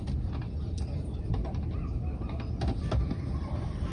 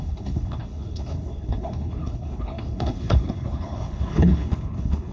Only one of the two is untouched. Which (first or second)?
first